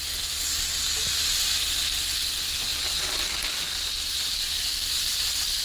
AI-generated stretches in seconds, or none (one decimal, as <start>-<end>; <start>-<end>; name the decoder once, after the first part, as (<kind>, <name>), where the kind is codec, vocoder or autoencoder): none